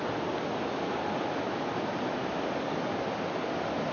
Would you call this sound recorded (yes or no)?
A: yes